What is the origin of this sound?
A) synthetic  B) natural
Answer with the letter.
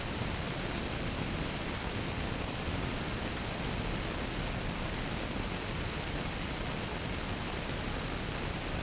B